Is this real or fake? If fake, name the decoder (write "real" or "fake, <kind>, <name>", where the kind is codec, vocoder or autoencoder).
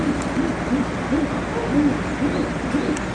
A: real